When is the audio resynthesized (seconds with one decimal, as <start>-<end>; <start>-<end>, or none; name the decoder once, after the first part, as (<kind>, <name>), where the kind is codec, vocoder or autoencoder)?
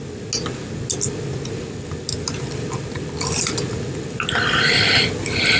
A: none